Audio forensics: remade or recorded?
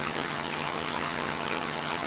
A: remade